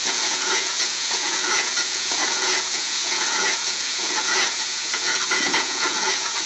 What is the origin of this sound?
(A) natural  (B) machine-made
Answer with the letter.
B